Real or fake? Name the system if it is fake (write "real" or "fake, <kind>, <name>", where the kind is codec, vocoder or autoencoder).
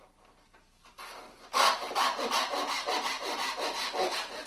real